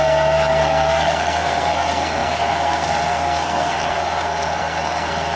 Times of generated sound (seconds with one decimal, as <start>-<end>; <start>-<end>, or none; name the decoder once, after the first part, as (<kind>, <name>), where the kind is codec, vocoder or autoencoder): 0.0-5.4 (codec, SNAC)

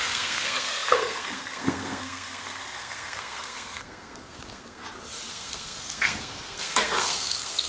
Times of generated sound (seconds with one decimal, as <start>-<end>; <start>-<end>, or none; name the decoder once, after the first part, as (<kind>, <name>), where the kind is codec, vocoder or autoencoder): 0.0-4.8 (codec, SNAC); 5.3-7.7

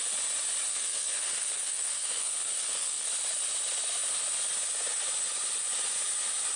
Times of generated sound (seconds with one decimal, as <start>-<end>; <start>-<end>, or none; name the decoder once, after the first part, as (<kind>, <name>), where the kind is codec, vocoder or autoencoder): 0.7-3.1 (codec, SNAC)

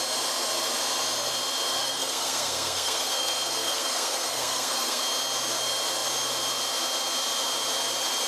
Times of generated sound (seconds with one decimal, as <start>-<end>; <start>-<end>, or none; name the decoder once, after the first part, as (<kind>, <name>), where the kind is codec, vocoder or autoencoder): 1.8-5.0 (codec, SNAC)

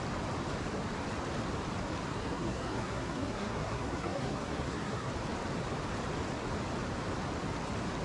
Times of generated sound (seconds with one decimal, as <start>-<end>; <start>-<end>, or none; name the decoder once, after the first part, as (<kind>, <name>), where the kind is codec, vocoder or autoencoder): 2.1-5.1 (codec, SNAC)

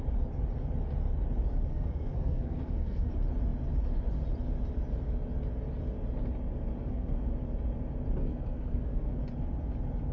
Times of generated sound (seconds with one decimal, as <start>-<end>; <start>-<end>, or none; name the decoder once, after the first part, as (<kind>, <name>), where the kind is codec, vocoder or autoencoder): 1.7-3.1 (codec, SNAC); 6.8-7.3; 8.2-9.2

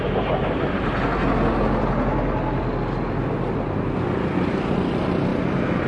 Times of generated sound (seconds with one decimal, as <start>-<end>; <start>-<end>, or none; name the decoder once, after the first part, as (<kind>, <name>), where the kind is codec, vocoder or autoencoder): none

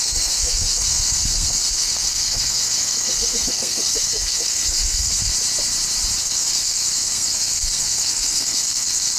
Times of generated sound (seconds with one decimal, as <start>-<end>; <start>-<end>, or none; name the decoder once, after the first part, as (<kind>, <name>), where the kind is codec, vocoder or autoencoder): 0.0-5.3 (codec, SNAC); 6.2-9.2